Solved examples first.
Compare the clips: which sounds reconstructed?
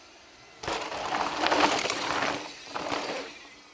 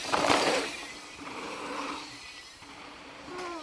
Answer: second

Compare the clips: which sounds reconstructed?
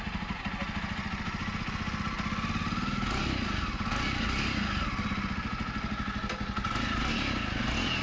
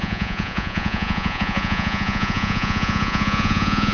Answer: second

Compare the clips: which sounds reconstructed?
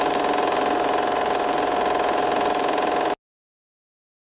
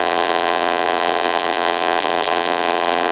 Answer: second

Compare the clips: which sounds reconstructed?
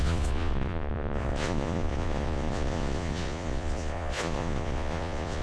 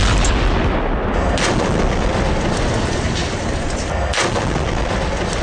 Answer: first